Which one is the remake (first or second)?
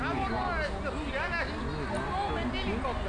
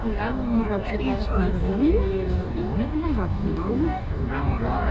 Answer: second